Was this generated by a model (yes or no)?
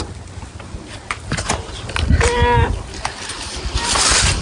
no